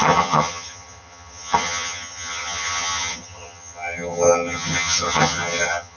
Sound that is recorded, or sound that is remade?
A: remade